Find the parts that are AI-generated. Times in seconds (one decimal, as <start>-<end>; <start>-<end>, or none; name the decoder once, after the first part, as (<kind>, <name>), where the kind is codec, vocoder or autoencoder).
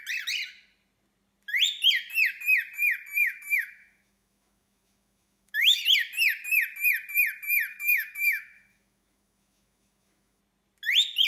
3.2-5.8 (autoencoder, DAC-VAE); 7.7-10.4